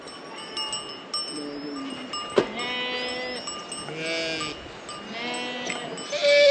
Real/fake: real